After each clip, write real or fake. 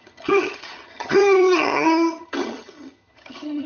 fake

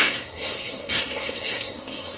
fake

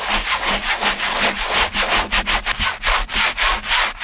real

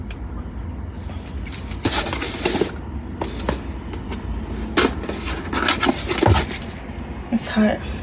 real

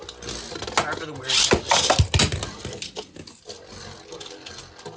real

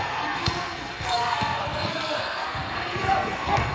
fake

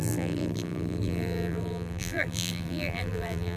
fake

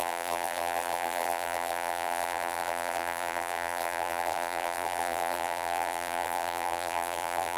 fake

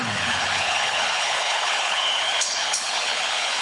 fake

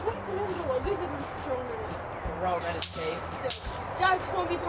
real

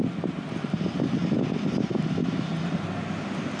real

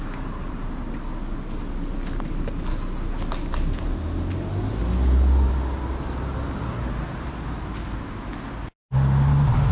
real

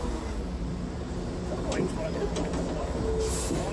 real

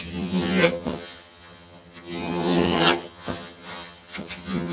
fake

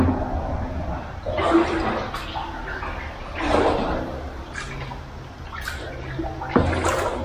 real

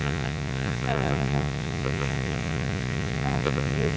fake